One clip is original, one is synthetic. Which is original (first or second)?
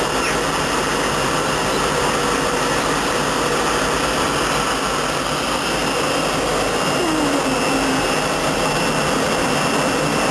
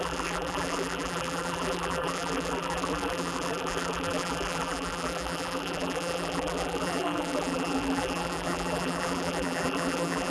first